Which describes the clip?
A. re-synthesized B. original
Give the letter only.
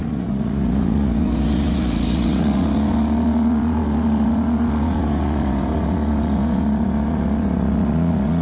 A